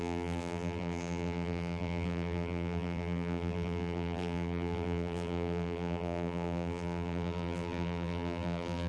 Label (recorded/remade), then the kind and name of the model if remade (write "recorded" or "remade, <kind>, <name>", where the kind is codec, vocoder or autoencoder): remade, vocoder, BigVGAN v2